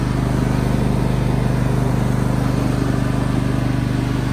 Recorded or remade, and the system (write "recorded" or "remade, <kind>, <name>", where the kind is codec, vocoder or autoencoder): recorded